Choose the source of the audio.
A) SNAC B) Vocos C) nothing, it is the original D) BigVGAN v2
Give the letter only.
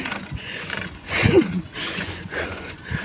B